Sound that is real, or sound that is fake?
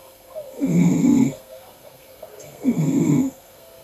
fake